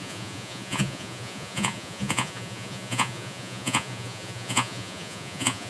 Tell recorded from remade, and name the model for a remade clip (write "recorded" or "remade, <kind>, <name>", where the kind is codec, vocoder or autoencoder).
remade, vocoder, Vocos